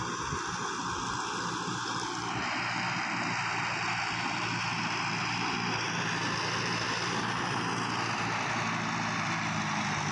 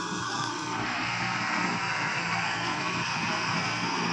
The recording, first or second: first